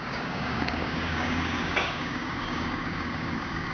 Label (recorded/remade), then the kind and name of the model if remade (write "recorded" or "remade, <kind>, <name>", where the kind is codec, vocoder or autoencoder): remade, codec, DAC